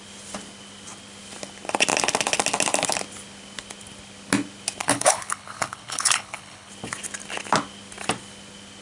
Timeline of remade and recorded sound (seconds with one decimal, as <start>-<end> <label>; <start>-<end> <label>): 0.0-4.8 recorded; 4.8-6.7 remade; 6.7-8.8 recorded